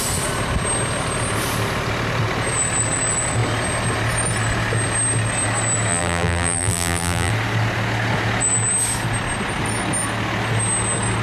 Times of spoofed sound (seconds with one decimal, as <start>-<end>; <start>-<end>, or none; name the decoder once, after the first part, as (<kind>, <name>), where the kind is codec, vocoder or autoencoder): 5.9-7.3 (vocoder, BigVGAN v2)